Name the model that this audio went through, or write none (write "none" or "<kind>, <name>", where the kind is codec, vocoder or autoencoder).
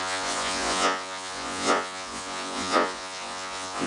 vocoder, Vocos